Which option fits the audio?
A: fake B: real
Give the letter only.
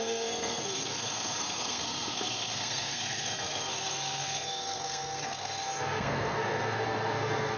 A